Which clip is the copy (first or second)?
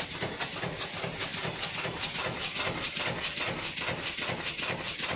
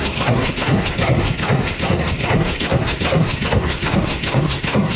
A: second